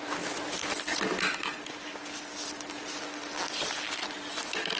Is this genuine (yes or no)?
yes